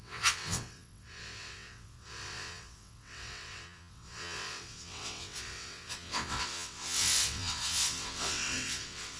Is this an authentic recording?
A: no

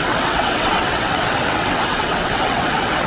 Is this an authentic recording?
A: no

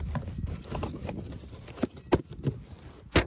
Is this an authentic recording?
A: yes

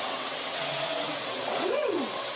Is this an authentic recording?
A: no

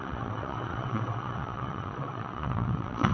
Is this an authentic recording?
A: no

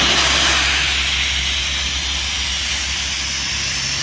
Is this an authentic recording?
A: yes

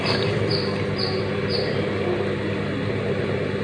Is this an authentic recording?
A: yes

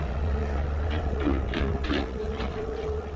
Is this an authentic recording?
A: no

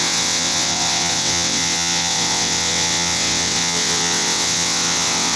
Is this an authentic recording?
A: no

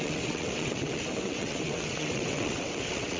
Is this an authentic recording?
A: no